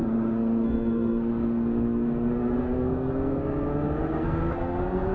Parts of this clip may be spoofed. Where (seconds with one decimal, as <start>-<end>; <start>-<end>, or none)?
0.0-5.1